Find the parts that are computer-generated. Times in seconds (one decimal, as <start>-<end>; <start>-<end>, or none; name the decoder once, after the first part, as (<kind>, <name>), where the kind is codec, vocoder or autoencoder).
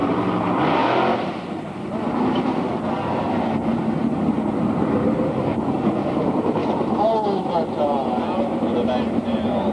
0.0-0.8 (vocoder, BigVGAN v2); 3.4-6.6; 9.2-9.7